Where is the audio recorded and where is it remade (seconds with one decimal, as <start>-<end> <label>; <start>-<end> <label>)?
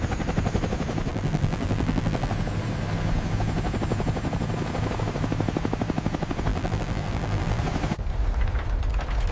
0.0-1.1 recorded; 1.1-2.3 remade; 2.3-6.5 recorded; 6.5-7.6 remade; 7.6-9.3 recorded